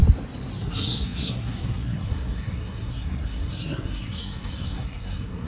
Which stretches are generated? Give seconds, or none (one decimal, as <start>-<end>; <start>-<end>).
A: 0.6-5.5